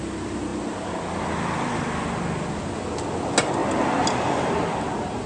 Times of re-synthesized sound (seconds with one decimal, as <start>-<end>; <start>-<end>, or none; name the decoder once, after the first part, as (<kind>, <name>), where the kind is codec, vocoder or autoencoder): none